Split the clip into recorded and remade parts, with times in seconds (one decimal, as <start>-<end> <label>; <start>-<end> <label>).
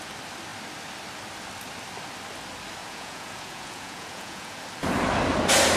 0.0-2.8 recorded; 2.8-4.5 remade; 4.5-5.8 recorded